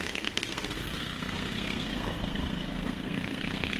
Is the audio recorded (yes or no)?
no